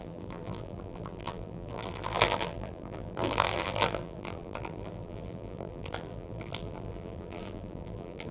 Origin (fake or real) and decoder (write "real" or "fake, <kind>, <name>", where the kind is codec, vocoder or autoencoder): fake, vocoder, BigVGAN v2